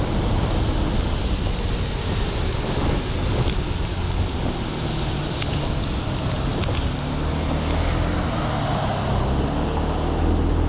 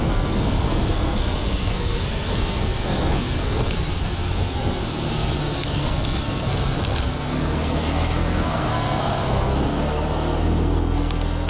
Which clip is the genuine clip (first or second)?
first